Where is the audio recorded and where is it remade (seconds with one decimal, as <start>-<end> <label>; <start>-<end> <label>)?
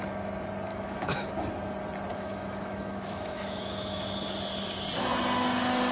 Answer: 0.0-0.7 recorded; 0.7-1.3 remade; 1.3-2.1 recorded; 2.1-4.0 remade; 4.0-5.9 recorded